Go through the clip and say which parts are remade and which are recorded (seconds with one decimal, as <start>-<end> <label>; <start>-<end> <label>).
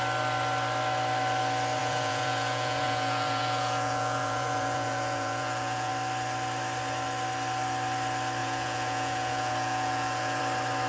0.0-1.8 recorded; 1.8-5.9 remade; 5.9-8.4 recorded; 8.4-10.4 remade; 10.4-10.9 recorded